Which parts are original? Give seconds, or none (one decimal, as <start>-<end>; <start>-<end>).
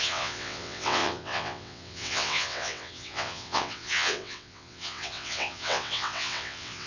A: none